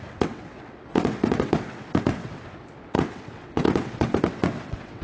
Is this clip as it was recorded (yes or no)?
no